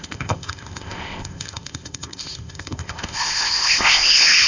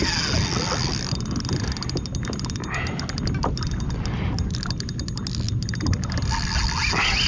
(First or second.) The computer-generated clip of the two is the first